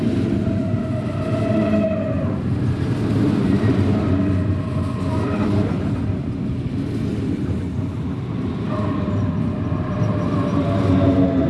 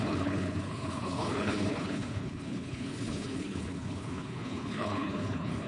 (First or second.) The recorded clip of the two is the first